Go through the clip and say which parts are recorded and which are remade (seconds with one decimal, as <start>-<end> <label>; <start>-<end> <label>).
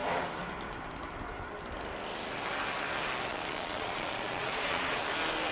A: 0.0-3.3 recorded; 3.3-5.0 remade; 5.0-5.5 recorded